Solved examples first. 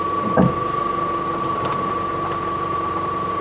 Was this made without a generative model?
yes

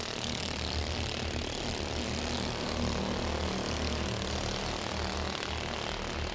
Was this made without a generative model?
yes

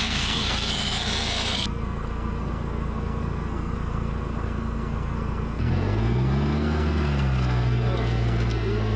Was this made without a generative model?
no